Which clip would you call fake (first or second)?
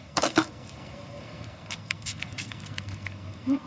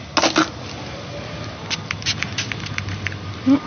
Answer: first